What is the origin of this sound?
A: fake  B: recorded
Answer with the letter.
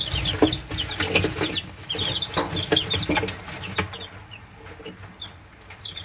B